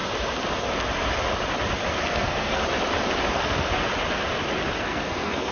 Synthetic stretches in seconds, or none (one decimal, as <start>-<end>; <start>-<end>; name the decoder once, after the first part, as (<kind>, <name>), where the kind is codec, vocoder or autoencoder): 1.9-2.6 (codec, SNAC); 3.3-3.9; 4.8-5.5